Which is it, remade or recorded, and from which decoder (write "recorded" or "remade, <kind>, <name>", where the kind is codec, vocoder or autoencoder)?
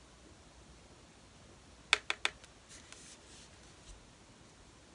recorded